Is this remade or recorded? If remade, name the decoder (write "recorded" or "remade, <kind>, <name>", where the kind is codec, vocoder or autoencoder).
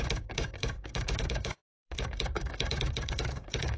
remade, codec, DAC